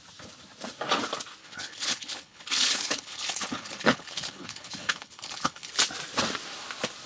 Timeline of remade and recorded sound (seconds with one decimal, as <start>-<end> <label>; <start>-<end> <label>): 0.0-1.4 recorded; 1.4-5.7 remade; 5.7-7.1 recorded